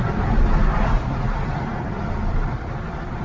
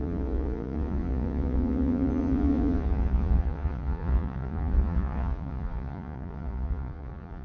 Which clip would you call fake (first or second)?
second